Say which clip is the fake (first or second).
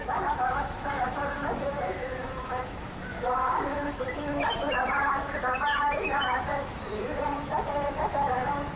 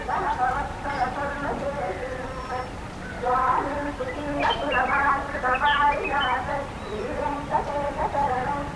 first